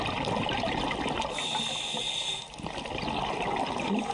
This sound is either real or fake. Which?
real